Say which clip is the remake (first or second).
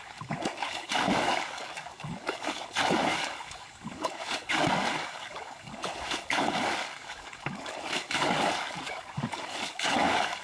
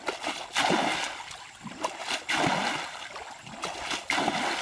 first